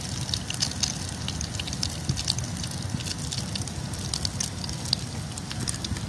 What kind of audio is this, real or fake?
real